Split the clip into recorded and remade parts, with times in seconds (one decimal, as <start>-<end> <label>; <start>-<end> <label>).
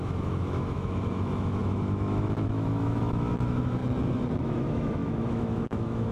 0.0-3.8 remade; 3.8-4.4 recorded; 4.4-6.1 remade